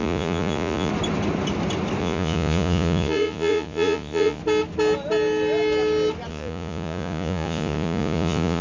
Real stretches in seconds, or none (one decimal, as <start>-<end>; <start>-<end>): 0.9-2.0; 4.4-6.3